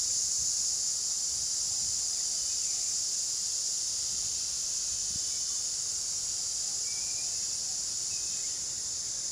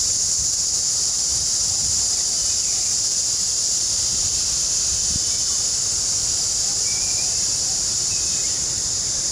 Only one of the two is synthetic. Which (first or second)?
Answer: second